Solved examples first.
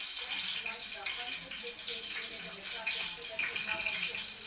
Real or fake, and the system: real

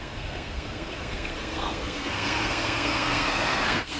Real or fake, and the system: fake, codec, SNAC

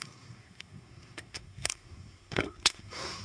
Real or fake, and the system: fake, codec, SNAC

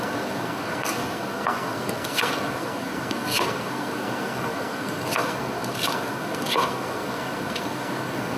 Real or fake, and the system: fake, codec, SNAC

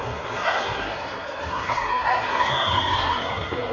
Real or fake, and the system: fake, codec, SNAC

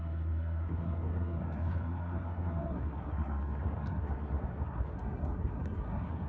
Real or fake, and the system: fake, codec, SNAC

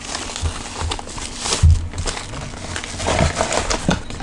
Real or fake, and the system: real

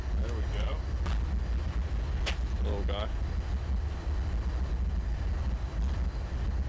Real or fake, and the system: real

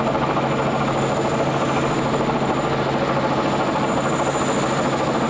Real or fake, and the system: real